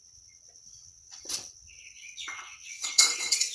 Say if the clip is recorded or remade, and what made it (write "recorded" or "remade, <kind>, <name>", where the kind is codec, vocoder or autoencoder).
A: remade, vocoder, WaveNeXt